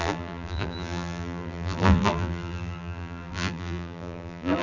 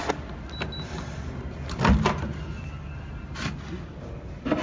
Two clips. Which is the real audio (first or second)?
second